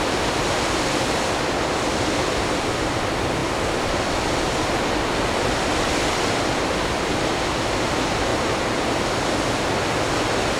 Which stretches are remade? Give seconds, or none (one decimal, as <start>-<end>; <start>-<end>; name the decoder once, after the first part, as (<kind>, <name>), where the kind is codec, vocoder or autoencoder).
none